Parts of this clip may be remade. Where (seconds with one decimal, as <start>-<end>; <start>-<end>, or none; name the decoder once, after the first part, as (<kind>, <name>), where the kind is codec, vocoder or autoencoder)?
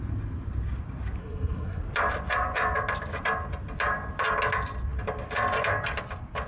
1.2-1.8 (codec, SNAC)